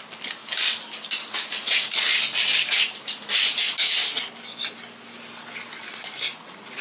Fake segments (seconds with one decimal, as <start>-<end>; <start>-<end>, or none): none